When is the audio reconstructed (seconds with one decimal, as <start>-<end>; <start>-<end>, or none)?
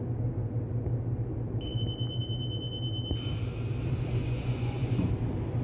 4.2-5.1